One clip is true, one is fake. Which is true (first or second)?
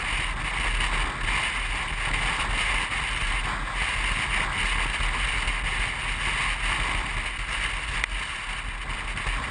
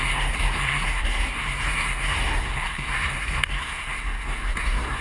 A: first